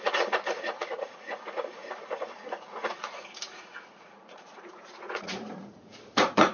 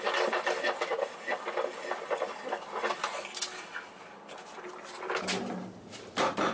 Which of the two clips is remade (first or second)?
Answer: first